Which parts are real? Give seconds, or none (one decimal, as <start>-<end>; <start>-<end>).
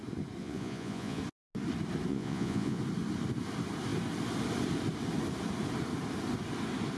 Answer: 0.0-0.4; 1.2-2.1; 2.8-7.0